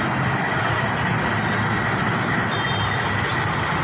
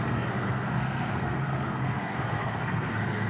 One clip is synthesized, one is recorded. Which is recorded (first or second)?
first